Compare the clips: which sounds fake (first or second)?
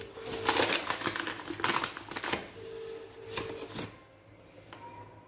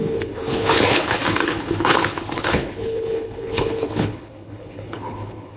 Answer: second